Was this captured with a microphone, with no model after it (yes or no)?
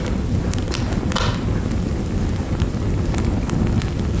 yes